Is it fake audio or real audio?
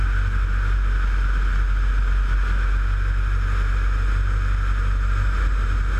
real